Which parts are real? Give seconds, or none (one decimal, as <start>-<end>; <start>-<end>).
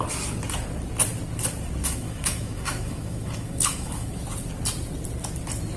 0.0-1.8; 4.1-5.8